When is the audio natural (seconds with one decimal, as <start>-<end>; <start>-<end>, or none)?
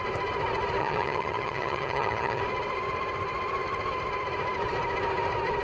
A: 0.0-0.8; 2.4-5.6